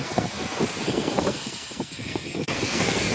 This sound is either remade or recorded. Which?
remade